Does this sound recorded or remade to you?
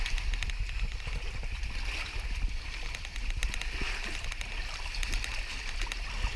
recorded